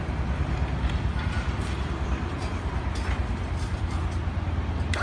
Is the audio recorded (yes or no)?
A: yes